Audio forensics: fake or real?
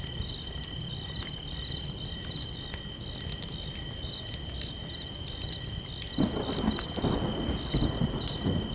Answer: real